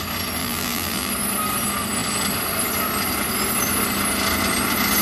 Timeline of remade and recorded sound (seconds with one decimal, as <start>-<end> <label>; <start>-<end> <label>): 0.0-0.4 recorded; 0.4-1.1 remade; 1.1-5.0 recorded